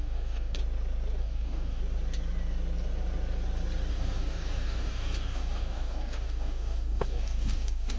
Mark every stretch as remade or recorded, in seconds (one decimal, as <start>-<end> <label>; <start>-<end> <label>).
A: 0.0-0.6 remade; 0.6-1.2 recorded; 1.2-1.8 remade; 1.8-3.9 recorded; 3.9-8.0 remade